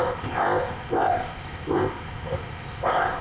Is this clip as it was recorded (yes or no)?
no